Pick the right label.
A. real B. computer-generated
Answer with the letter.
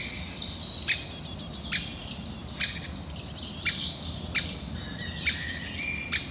A